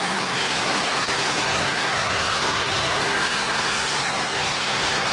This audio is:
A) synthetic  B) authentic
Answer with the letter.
A